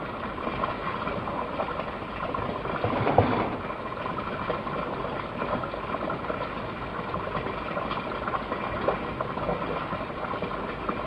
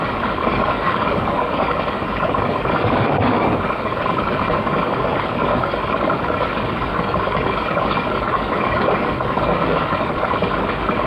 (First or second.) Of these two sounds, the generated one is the second